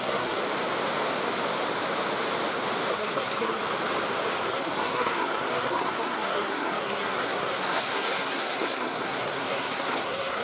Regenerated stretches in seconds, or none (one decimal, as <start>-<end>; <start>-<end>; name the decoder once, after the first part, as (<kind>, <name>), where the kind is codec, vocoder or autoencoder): 0.0-0.4 (codec, SNAC); 2.9-3.6; 4.5-10.4